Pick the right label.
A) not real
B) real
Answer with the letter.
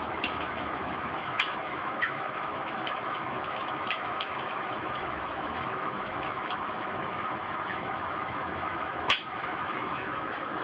A